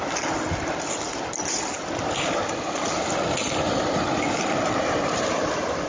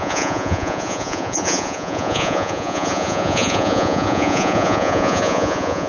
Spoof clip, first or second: second